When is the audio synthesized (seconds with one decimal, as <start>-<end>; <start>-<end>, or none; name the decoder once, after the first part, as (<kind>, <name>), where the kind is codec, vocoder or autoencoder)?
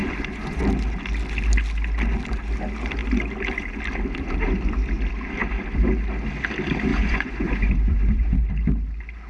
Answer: 0.0-0.6 (vocoder, Vocos); 6.9-8.4